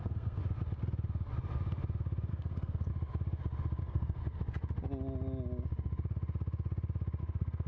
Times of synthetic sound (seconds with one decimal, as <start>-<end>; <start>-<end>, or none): 0.0-0.4; 2.3-2.9; 3.8-4.2; 7.2-7.7